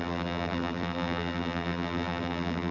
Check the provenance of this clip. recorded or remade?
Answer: remade